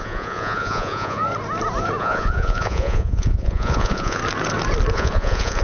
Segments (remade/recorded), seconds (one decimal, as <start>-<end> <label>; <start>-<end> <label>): 0.0-1.2 remade; 1.2-2.0 recorded; 2.0-4.2 remade; 4.2-4.9 recorded; 4.9-5.6 remade